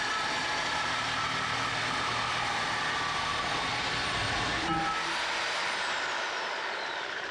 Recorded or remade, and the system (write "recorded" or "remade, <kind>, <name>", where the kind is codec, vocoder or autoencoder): recorded